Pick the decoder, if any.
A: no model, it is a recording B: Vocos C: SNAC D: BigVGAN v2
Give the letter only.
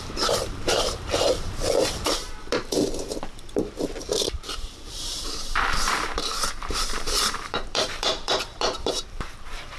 D